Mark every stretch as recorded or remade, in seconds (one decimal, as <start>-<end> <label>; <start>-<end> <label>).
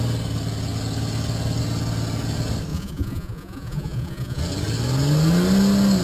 0.0-2.7 recorded; 2.7-4.4 remade; 4.4-6.0 recorded